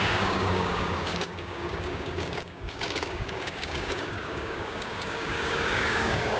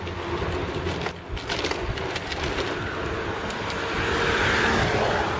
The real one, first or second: second